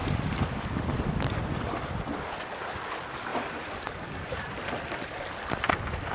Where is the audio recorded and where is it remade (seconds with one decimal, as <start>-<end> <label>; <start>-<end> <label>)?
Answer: 0.0-2.6 remade; 2.6-6.1 recorded